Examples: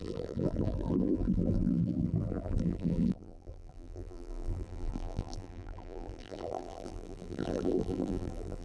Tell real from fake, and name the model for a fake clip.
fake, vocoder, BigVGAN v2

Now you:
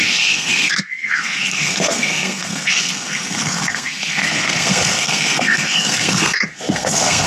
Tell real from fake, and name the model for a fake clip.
fake, codec, SNAC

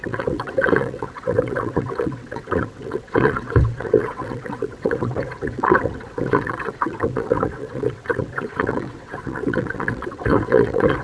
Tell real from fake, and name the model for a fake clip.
fake, vocoder, WaveNeXt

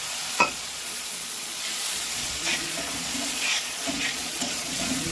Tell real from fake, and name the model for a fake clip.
fake, vocoder, Vocos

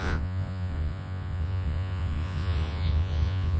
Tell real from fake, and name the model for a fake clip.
fake, vocoder, Vocos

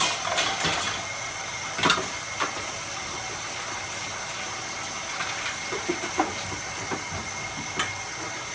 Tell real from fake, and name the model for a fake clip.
real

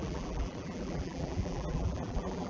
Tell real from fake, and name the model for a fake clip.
fake, vocoder, BigVGAN v2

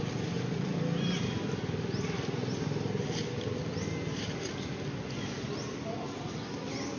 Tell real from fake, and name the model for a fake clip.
real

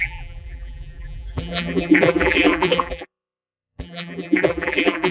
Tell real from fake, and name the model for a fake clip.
fake, vocoder, BigVGAN v2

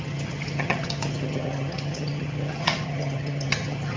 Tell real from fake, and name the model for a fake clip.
fake, vocoder, HiFi-GAN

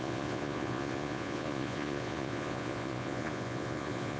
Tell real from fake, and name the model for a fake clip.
fake, vocoder, Vocos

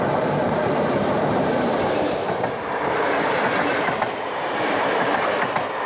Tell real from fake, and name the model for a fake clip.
real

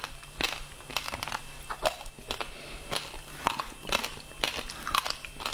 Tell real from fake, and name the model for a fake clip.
real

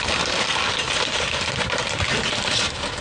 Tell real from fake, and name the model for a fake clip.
real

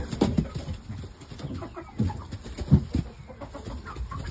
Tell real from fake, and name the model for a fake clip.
real